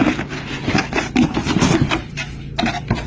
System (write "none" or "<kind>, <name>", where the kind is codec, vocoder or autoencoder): vocoder, BigVGAN v2